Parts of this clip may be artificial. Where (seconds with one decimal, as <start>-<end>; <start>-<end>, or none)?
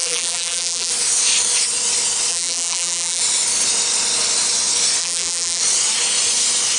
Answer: 0.0-0.9; 2.3-3.2; 5.0-5.6